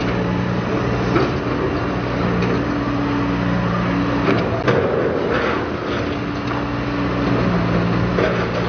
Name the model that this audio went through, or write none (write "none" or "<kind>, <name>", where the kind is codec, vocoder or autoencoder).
none